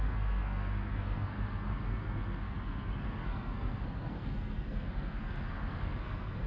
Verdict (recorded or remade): remade